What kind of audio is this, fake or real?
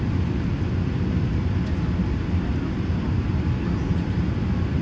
real